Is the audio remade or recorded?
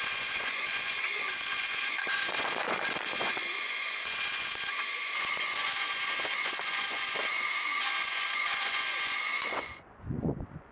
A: remade